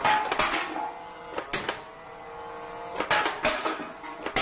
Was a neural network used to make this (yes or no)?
no